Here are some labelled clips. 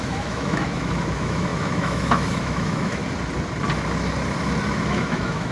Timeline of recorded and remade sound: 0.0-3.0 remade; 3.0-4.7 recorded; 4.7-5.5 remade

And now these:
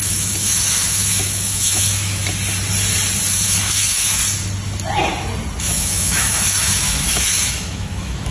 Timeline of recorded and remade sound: 0.0-2.2 remade; 2.2-3.3 recorded; 3.3-4.2 remade; 4.2-5.6 recorded; 5.6-8.3 remade

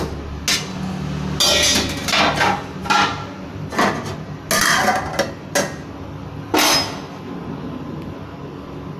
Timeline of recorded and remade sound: 0.0-9.0 recorded

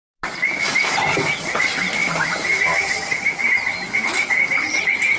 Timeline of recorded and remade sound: 0.0-5.2 recorded

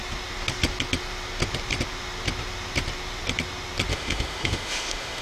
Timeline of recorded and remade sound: 0.0-3.9 recorded; 3.9-5.2 remade

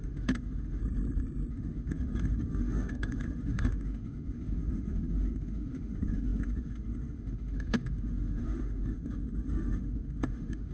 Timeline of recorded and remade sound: 0.0-0.8 remade; 0.8-1.5 recorded; 1.5-10.7 remade

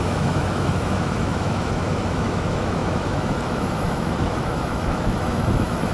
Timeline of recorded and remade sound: 0.0-5.9 remade